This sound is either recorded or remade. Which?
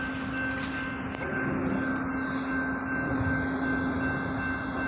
recorded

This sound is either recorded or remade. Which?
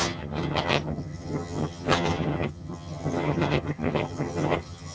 remade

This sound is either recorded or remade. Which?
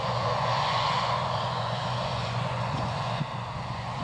remade